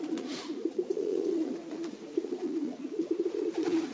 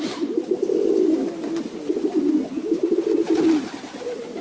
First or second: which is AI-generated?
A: first